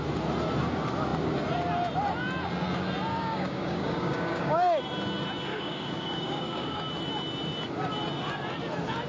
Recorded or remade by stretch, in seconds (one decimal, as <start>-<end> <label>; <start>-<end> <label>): 0.0-3.1 recorded; 3.1-4.8 remade; 4.8-5.5 recorded; 5.5-6.9 remade; 6.9-9.1 recorded